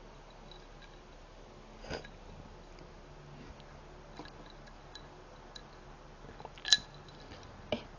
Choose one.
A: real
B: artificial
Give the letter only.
A